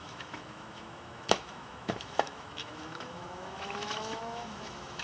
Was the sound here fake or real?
fake